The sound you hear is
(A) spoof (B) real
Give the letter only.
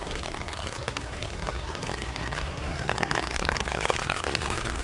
A